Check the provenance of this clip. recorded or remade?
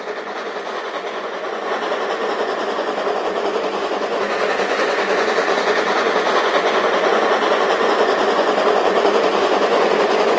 remade